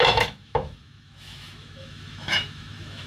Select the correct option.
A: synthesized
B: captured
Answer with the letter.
A